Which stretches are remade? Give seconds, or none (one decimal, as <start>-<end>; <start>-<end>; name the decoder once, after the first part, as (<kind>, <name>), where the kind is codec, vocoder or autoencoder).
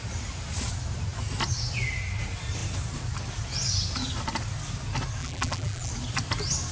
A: 5.2-5.9 (vocoder, BigVGAN v2)